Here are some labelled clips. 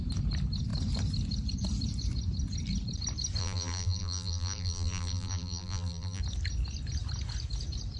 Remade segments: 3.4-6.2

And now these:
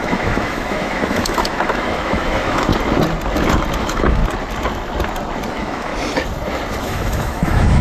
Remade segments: 0.0-2.7; 3.8-4.2; 5.5-5.9; 6.8-7.8

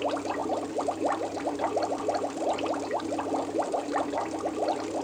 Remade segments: none

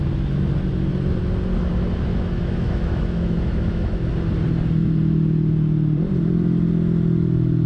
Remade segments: 2.1-4.1

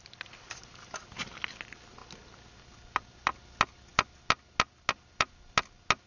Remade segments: none